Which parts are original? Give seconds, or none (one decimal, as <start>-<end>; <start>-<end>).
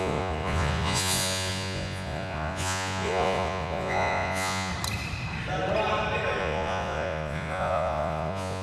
4.7-6.4